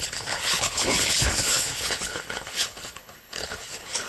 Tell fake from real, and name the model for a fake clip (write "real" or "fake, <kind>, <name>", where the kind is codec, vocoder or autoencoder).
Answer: fake, codec, HILCodec